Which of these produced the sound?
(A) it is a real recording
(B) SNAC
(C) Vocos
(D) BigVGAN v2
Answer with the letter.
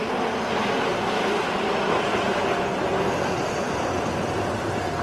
A